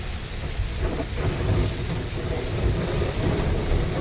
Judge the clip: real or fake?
real